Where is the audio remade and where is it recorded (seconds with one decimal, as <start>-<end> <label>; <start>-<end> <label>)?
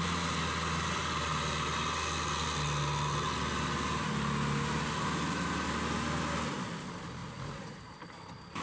0.0-7.2 recorded; 7.2-7.8 remade; 7.8-8.6 recorded